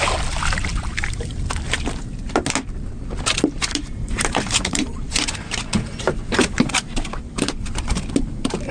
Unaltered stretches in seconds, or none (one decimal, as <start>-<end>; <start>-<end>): 0.0-0.7; 1.4-3.7; 4.8-6.4; 7.8-8.7